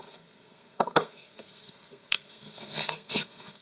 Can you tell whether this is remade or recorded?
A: remade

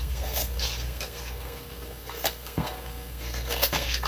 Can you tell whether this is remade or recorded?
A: remade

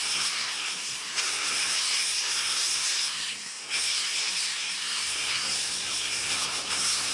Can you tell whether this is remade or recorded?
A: remade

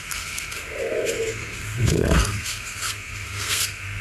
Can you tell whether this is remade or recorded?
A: remade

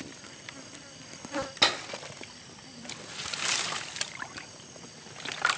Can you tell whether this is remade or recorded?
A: recorded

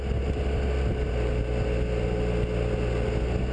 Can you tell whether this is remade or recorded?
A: recorded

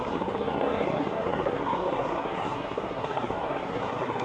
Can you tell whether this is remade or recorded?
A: remade